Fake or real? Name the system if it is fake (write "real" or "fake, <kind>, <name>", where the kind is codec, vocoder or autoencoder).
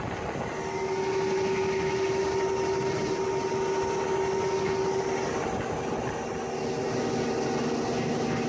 real